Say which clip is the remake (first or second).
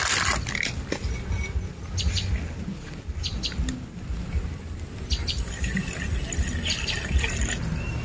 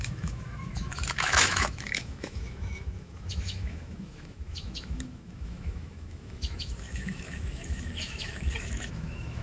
second